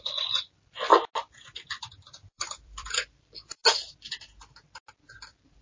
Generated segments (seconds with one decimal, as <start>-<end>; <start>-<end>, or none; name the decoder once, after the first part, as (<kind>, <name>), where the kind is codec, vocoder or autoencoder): 0.0-0.9 (vocoder, BigVGAN v2); 1.4-3.6; 5.1-5.6